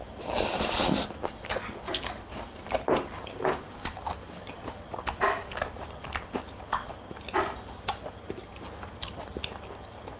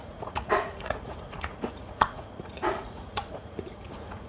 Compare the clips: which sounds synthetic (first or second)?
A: second